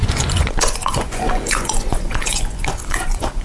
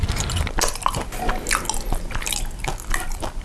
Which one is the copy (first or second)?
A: first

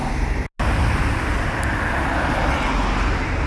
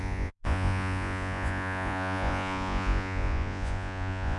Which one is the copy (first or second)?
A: second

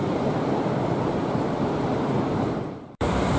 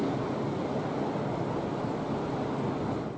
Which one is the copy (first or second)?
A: first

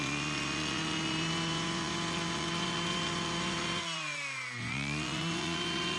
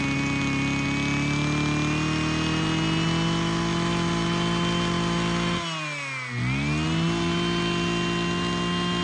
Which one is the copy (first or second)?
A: first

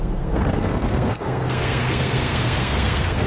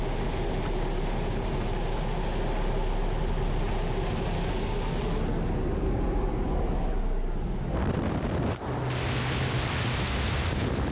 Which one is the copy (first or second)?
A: first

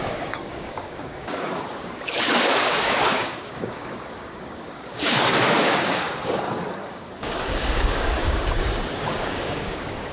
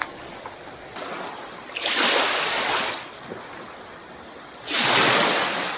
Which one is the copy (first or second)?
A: first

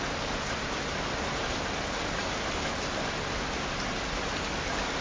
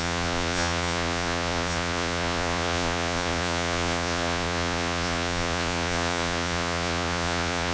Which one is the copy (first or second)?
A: second